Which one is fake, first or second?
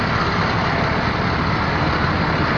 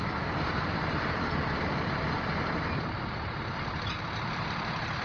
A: second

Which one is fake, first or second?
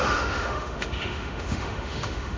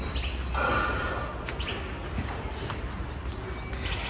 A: first